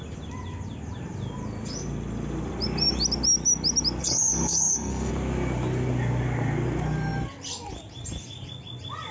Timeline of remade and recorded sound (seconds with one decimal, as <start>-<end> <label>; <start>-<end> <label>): 0.0-4.0 recorded; 4.0-5.1 remade; 5.1-9.1 recorded